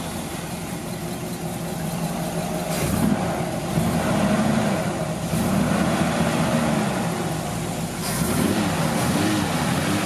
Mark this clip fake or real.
real